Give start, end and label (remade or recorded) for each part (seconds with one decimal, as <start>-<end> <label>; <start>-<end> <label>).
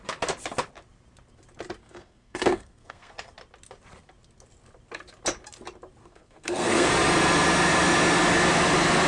0.0-1.8 recorded; 1.8-3.1 remade; 3.1-6.0 recorded; 6.0-6.9 remade; 6.9-9.1 recorded